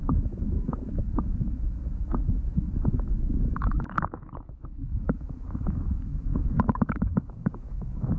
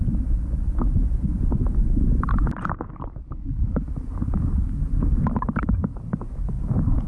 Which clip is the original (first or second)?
second